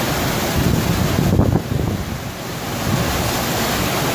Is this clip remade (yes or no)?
no